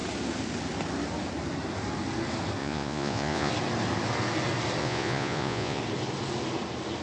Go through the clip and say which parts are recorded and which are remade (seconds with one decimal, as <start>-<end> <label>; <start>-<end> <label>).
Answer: 0.0-2.6 recorded; 2.6-3.5 remade; 3.5-4.8 recorded; 4.8-5.8 remade; 5.8-7.0 recorded